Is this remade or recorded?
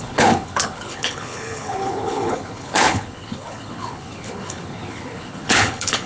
remade